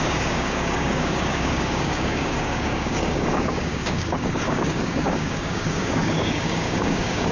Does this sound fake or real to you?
fake